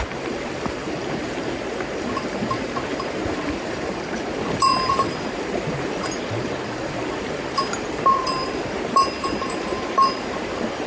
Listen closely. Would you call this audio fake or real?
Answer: fake